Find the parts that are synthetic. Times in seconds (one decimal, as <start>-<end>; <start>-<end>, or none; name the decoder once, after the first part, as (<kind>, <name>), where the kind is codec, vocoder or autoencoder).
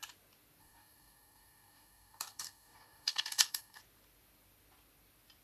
0.6-3.8 (codec, DAC)